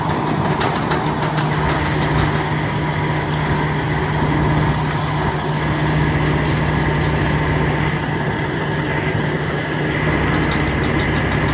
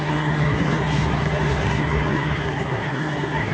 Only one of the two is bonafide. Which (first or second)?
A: first